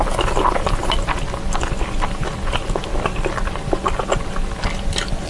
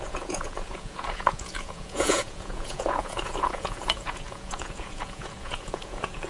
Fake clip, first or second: second